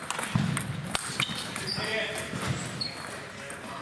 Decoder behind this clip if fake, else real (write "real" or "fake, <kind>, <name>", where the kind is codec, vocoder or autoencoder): real